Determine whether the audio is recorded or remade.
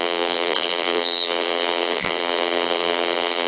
remade